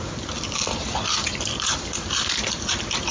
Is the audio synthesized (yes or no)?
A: yes